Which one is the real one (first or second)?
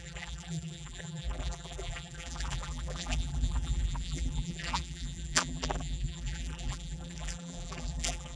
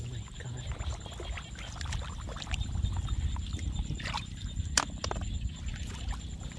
second